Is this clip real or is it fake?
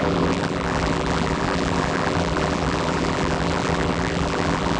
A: fake